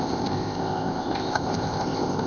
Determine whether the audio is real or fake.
fake